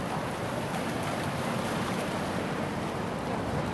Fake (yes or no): no